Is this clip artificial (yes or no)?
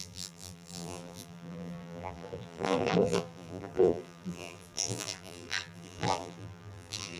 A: yes